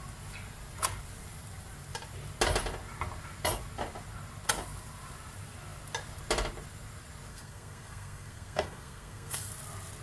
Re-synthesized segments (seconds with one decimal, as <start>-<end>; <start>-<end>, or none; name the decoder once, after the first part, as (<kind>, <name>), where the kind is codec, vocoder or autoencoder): 7.3-9.5 (codec, SNAC)

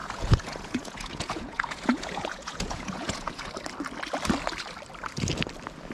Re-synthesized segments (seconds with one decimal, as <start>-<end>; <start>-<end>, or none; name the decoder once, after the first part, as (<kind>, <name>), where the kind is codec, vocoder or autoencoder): 0.0-3.5 (vocoder, Vocos)

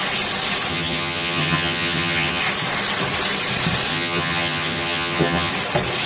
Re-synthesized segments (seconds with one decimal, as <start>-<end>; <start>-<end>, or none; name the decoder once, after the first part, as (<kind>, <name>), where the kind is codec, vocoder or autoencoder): 0.7-2.4 (vocoder, HiFi-GAN); 3.9-5.5

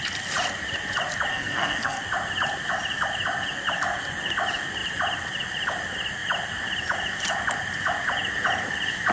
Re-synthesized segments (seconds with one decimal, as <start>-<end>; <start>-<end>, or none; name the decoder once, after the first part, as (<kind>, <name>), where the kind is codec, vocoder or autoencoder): 1.3-2.0 (codec, SNAC)